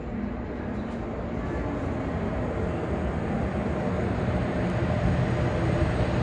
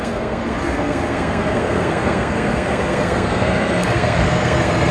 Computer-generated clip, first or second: second